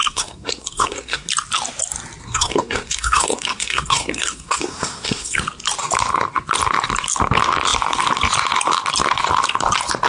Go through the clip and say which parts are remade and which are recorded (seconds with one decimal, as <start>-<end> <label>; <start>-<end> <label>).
0.0-1.3 remade; 1.3-2.2 recorded; 2.2-5.4 remade; 5.4-10.1 recorded